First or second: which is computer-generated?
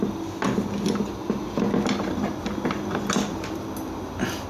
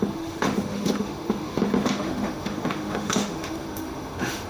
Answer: second